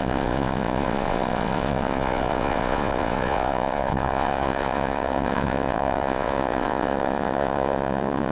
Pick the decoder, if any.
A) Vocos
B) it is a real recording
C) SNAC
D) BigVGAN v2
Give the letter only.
A